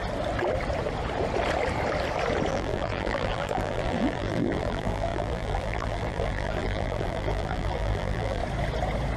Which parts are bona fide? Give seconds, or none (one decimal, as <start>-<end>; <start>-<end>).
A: 0.0-2.5; 8.4-9.2